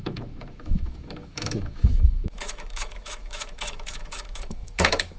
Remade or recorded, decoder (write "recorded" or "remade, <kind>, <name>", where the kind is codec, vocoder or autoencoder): remade, autoencoder, DAC-VAE